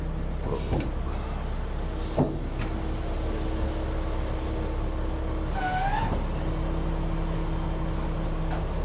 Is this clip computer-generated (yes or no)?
no